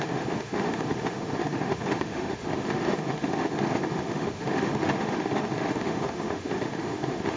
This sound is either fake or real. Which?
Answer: fake